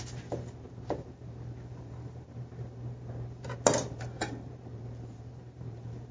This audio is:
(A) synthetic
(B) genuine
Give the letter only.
A